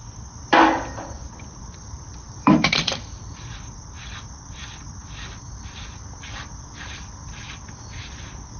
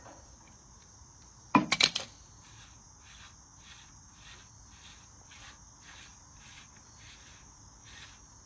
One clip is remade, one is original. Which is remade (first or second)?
first